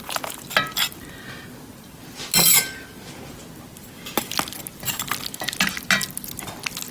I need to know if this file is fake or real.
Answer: real